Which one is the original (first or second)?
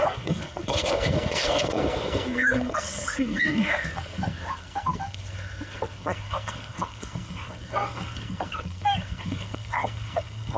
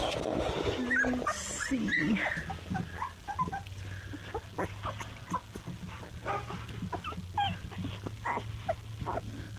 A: second